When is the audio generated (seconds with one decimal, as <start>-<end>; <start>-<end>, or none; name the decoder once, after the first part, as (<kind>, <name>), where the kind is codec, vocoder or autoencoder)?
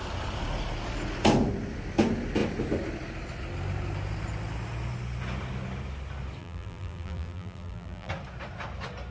6.4-8.1 (vocoder, BigVGAN v2)